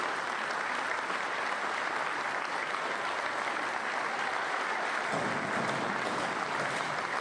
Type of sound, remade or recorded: recorded